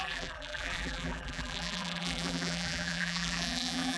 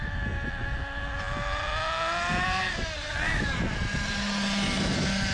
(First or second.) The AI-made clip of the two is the first